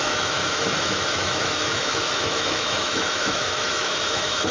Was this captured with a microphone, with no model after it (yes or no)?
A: no